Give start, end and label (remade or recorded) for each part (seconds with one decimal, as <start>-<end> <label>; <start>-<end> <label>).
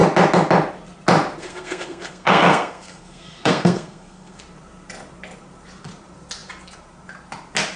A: 0.0-1.4 recorded; 1.4-4.4 remade; 4.4-7.8 recorded